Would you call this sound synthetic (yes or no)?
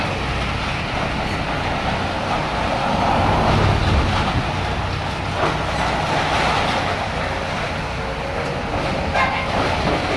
no